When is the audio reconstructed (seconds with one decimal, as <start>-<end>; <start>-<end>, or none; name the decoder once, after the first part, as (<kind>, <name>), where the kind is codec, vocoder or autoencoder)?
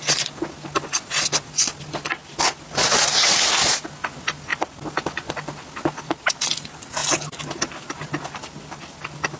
none